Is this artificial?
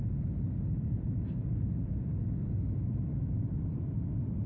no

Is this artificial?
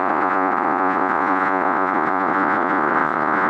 yes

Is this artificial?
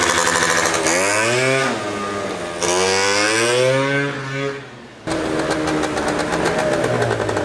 no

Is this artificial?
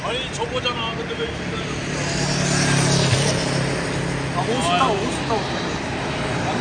no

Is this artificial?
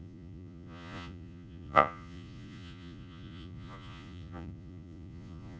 yes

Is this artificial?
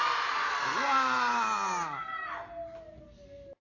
no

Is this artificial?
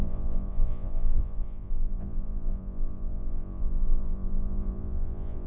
yes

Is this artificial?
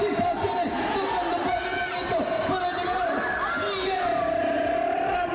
no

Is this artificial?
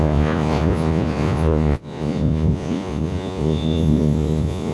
yes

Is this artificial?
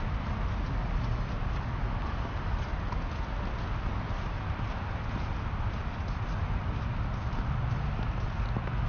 no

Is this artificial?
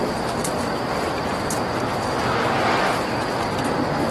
no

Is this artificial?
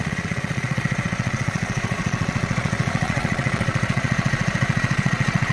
yes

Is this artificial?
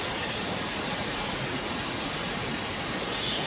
yes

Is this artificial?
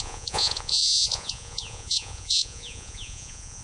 yes